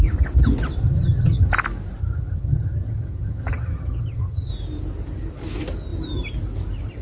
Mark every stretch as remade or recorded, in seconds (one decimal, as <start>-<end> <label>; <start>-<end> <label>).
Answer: 0.0-0.8 recorded; 0.8-1.5 remade; 1.5-2.0 recorded; 2.0-4.5 remade; 4.5-7.0 recorded

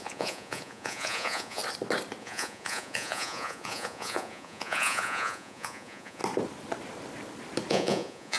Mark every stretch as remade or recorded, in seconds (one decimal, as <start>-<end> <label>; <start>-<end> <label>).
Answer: 0.0-1.6 remade; 1.6-2.2 recorded; 2.2-6.2 remade; 6.2-7.7 recorded; 7.7-8.4 remade

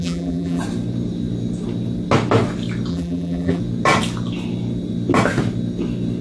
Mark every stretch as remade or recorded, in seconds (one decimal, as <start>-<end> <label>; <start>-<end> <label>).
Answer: 0.0-0.6 remade; 0.6-2.9 recorded; 2.9-3.6 remade; 3.6-6.2 recorded

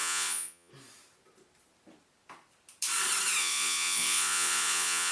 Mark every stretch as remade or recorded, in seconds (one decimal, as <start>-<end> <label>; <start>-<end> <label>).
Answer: 0.0-0.7 remade; 0.7-3.4 recorded; 3.4-5.1 remade